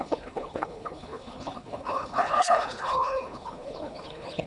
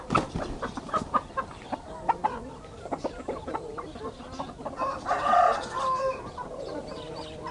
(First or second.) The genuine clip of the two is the second